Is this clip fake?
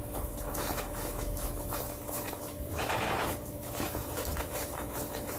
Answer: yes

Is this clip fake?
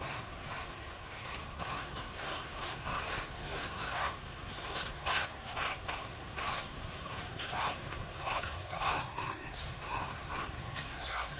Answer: yes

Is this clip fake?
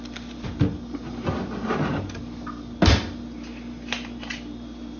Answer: no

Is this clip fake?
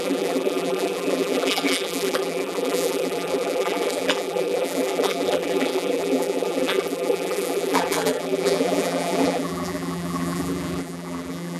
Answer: yes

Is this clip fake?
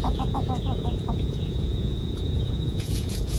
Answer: yes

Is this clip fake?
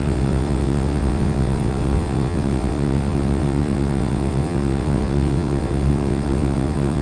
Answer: yes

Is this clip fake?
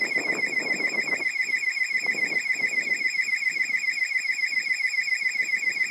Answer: no